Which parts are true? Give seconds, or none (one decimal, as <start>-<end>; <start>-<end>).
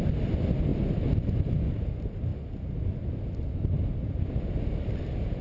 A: 0.0-0.7; 1.5-2.3; 3.1-5.4